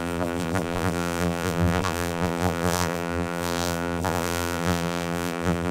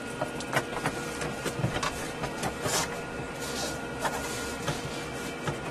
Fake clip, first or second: first